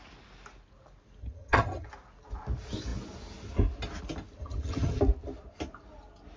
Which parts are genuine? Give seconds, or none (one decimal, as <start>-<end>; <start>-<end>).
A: 0.0-1.2; 1.9-4.4; 5.0-6.4